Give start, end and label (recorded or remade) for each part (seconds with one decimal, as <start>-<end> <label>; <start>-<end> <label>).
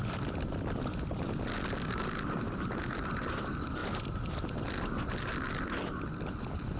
0.0-6.8 recorded